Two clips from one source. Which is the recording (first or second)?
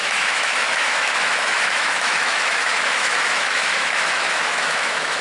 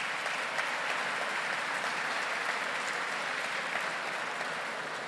second